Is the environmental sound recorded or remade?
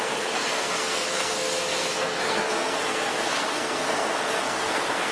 remade